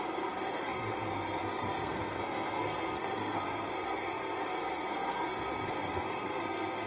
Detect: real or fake fake